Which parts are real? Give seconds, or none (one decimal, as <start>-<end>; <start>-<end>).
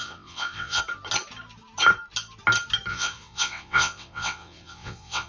0.8-2.9